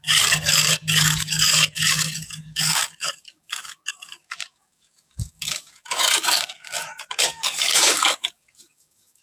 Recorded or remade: remade